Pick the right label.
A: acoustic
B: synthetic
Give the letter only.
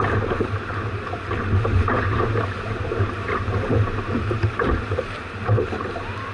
B